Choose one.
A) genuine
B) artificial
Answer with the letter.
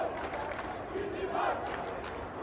A